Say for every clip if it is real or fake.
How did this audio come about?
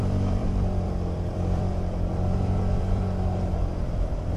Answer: fake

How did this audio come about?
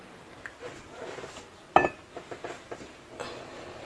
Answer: real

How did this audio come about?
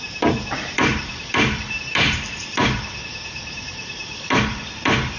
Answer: fake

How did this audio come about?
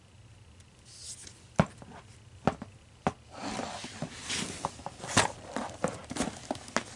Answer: real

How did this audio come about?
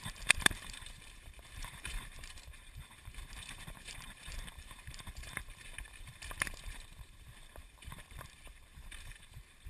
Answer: fake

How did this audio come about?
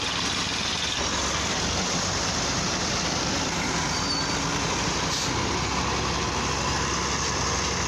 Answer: real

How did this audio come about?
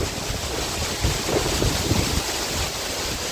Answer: real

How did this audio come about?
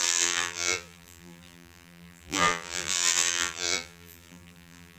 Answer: fake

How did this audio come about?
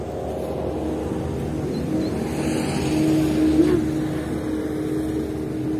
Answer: real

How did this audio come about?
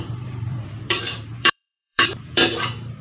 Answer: fake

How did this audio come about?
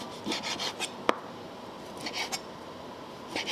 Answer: real